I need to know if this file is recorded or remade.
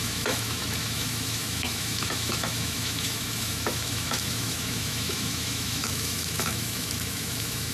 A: remade